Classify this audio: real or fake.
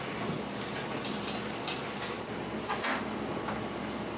real